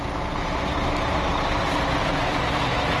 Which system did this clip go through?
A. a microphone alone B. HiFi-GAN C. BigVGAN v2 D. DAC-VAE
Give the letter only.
A